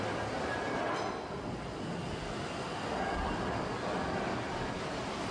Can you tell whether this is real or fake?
real